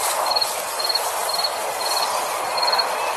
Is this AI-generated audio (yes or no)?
yes